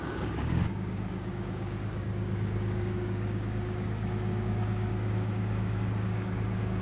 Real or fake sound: fake